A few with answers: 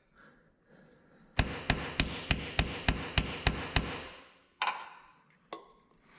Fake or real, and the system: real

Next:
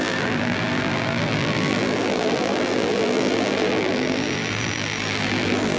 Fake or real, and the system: fake, vocoder, BigVGAN v2